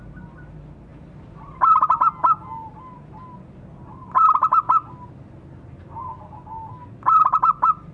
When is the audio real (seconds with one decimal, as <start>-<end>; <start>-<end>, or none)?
0.0-7.9